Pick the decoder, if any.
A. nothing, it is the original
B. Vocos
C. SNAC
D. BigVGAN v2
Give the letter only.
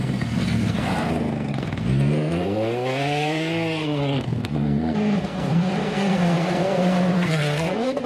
C